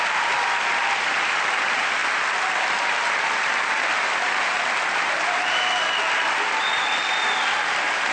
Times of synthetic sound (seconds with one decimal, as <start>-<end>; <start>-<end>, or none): none